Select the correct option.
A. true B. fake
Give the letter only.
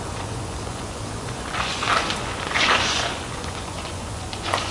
B